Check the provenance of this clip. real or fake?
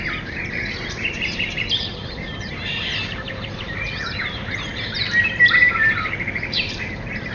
fake